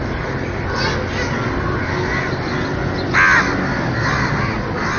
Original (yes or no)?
yes